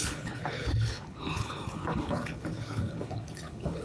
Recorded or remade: remade